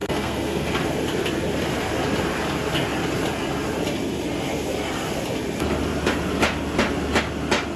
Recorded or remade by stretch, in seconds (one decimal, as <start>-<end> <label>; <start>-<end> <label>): 0.0-0.7 remade; 0.7-7.8 recorded